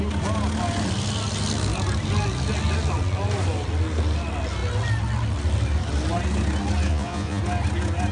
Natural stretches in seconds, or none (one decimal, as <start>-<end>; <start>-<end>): 0.0-6.9; 7.4-8.1